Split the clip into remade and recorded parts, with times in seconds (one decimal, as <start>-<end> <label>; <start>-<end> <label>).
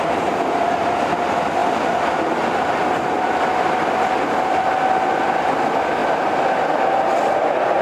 0.0-7.8 recorded